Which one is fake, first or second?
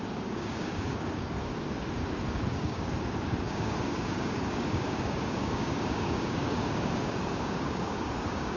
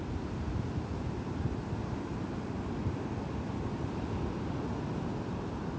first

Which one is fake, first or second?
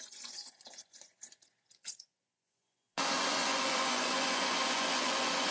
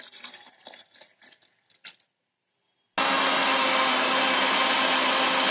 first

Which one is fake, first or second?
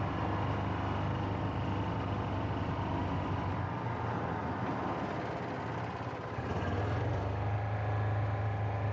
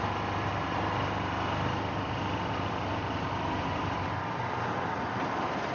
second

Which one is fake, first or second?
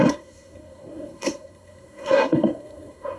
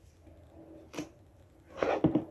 first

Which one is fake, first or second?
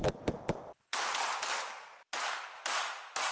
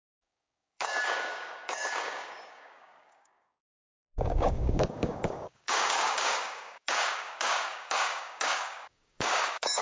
second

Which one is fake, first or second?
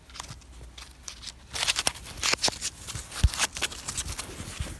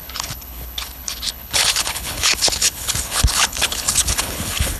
second